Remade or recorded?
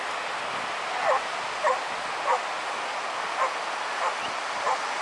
recorded